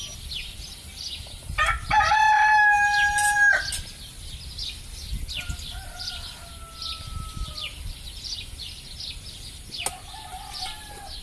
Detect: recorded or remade recorded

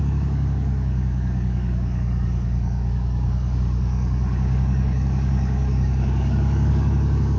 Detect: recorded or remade remade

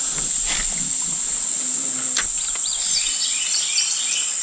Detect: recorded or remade recorded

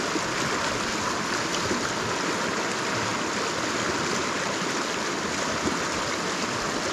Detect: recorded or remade recorded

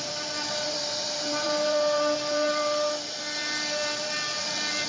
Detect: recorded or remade remade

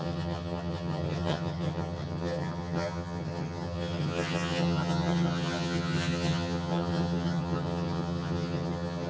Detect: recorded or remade remade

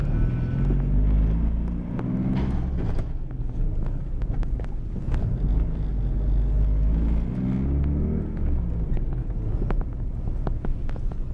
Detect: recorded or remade recorded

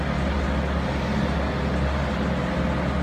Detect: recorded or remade recorded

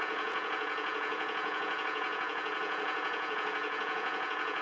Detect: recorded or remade remade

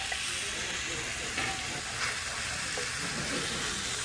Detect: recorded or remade recorded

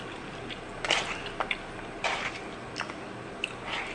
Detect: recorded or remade recorded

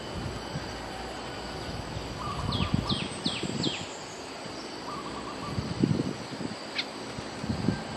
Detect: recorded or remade recorded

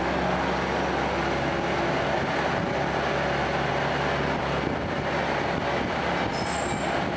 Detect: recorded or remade recorded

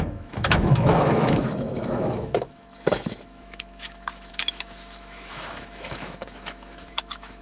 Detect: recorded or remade remade